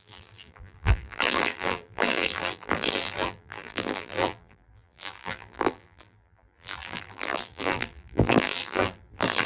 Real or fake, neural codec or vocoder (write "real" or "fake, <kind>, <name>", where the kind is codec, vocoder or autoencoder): fake, vocoder, BigVGAN v2